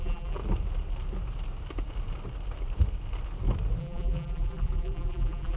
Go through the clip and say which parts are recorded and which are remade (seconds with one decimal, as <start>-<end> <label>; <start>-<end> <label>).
0.0-0.4 remade; 0.4-3.8 recorded; 3.8-5.6 remade